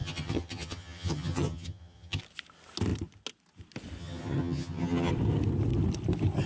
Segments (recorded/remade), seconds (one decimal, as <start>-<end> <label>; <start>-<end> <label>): 0.0-2.2 remade; 2.2-4.0 recorded; 4.0-5.1 remade; 5.1-6.5 recorded